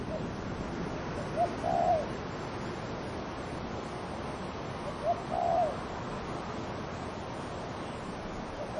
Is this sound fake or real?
real